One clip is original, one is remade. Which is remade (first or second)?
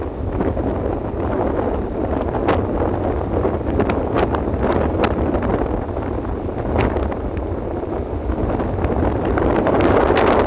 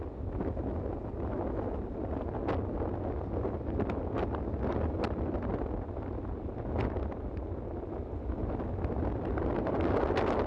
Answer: first